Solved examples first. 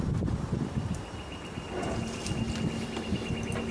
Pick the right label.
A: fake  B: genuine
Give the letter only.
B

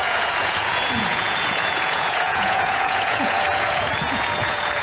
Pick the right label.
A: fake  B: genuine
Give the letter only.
A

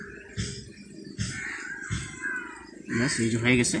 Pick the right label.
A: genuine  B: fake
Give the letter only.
A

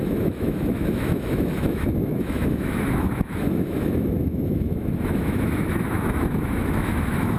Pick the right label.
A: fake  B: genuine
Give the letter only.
A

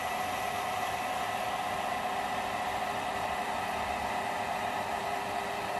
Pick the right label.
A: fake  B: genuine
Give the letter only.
B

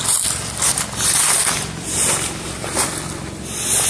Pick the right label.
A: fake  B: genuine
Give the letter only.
B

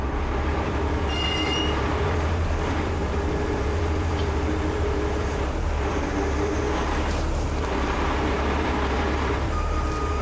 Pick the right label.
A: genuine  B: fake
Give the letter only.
B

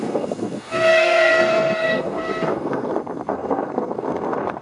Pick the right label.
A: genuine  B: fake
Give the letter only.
B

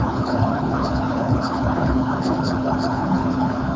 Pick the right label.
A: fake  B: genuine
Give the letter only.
A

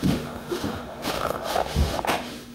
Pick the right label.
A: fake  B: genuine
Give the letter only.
A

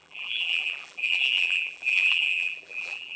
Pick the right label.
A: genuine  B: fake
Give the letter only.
B